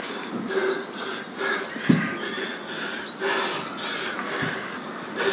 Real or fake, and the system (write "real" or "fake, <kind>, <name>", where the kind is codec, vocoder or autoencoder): real